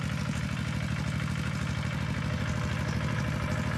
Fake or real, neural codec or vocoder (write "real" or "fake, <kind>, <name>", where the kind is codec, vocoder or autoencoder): real